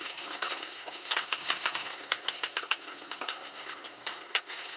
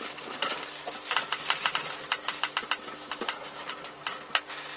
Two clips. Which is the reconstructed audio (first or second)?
first